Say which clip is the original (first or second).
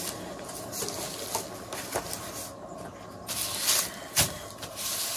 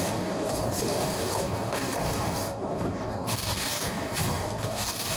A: first